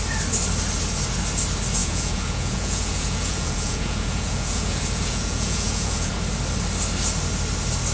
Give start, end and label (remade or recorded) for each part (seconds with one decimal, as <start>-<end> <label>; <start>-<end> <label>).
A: 0.0-1.8 recorded; 1.8-6.1 remade; 6.1-7.9 recorded